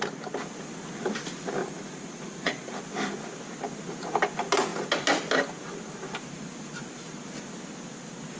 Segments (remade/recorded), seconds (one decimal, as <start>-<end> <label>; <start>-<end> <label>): 0.0-1.6 recorded; 1.6-2.8 remade; 2.8-8.4 recorded

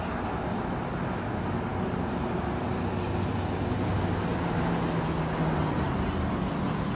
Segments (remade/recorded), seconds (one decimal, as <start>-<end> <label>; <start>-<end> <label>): 0.0-7.0 recorded

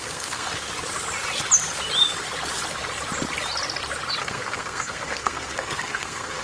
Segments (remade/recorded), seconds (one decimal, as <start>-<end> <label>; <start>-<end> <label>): 0.0-0.5 remade; 0.5-4.2 recorded; 4.2-6.4 remade